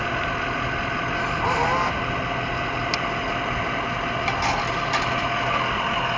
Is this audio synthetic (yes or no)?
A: no